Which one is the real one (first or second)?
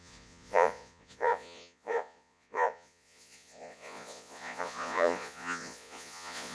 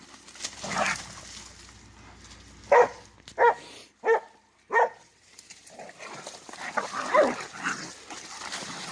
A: second